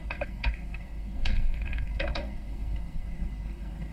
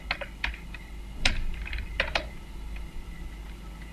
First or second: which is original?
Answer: second